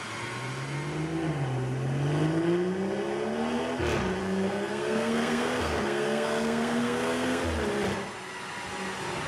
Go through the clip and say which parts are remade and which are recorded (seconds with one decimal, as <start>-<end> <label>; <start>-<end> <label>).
0.0-4.2 recorded; 4.2-7.4 remade; 7.4-9.3 recorded